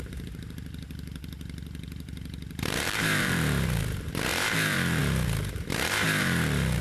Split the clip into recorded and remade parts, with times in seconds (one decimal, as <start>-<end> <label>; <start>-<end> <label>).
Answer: 0.0-6.8 remade